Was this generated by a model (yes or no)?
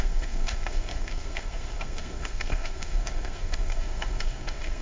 yes